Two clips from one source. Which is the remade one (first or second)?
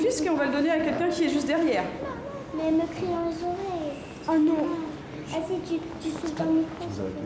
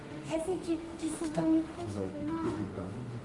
second